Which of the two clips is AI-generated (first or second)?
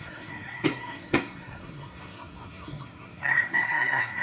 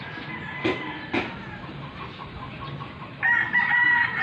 first